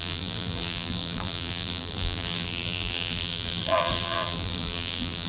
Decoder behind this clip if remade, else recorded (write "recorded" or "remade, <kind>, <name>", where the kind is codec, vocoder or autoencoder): remade, vocoder, BigVGAN v2